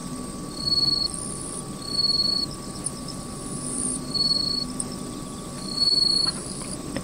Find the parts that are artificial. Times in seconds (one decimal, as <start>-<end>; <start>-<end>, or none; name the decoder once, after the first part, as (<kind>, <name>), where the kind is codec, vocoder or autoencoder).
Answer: 2.2-6.4 (vocoder, BigVGAN v2)